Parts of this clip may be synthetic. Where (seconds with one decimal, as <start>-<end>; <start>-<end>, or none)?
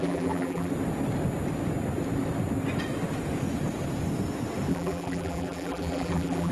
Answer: 0.0-0.7; 4.7-6.5